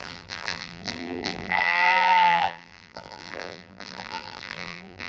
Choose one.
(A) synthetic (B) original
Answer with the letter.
A